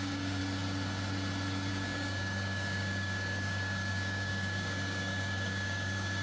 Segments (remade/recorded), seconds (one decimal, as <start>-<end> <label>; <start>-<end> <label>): 0.0-0.4 remade; 0.4-1.7 recorded; 1.7-6.2 remade